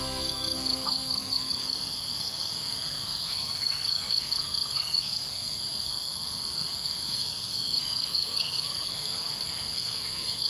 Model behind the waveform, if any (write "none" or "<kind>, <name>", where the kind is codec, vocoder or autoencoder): codec, SNAC